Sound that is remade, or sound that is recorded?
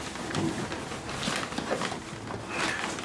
recorded